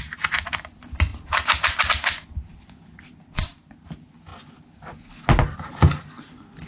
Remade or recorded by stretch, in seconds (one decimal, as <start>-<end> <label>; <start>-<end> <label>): 0.0-6.7 recorded